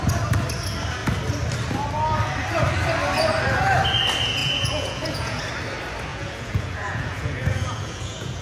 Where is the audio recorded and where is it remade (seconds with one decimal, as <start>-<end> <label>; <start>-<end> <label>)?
0.0-4.4 recorded; 4.4-5.4 remade; 5.4-6.1 recorded; 6.1-8.4 remade